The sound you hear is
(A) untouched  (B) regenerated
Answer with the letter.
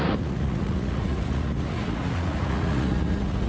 B